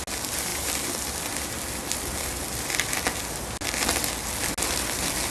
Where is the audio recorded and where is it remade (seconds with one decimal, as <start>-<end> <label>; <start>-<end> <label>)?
0.0-0.5 recorded; 0.5-1.0 remade; 1.0-1.8 recorded; 1.8-2.4 remade; 2.4-5.3 recorded